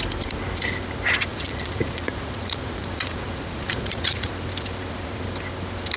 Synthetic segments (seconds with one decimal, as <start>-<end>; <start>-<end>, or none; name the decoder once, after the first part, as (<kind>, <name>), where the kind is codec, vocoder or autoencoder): 1.3-4.3 (vocoder, Vocos)